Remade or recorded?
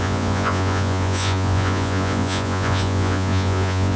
remade